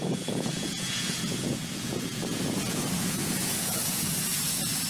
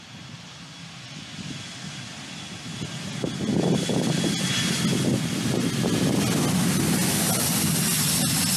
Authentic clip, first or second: second